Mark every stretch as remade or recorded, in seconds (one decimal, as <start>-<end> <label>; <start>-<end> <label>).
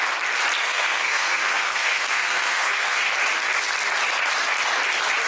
0.0-0.6 recorded; 0.6-3.1 remade; 3.1-5.3 recorded